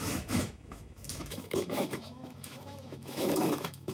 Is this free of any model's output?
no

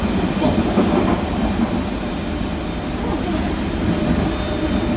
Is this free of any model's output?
yes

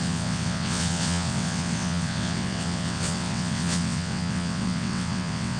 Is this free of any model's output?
no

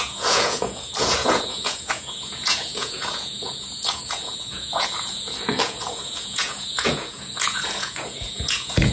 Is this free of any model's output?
no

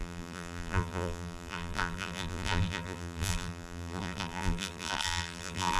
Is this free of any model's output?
no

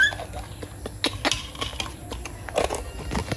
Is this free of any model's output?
yes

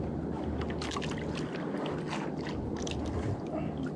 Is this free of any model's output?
yes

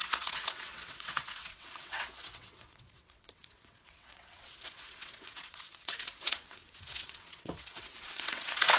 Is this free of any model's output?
no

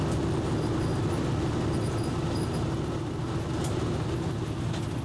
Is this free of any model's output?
yes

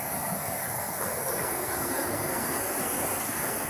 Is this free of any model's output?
no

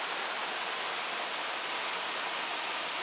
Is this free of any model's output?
yes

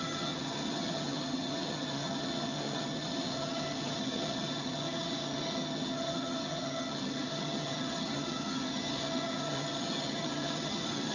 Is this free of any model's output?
no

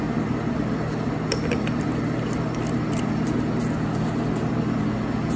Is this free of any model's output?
yes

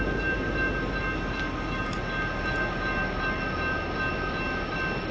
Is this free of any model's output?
yes